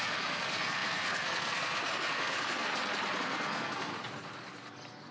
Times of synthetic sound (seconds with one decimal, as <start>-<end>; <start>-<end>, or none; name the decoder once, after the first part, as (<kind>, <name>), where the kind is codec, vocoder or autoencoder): 0.0-2.7 (codec, SNAC); 3.2-3.9